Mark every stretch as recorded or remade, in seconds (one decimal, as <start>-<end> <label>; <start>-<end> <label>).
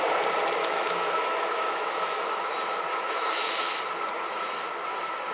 0.0-0.6 recorded; 0.6-2.5 remade; 2.5-2.9 recorded; 2.9-3.8 remade; 3.8-5.3 recorded